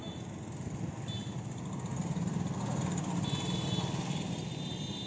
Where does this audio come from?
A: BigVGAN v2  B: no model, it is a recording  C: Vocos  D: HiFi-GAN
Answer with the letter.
B